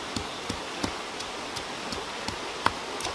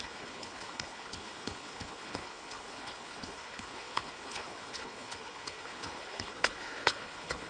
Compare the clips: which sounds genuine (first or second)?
first